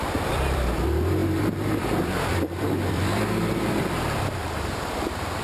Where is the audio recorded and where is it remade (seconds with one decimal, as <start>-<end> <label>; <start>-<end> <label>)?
0.0-5.4 remade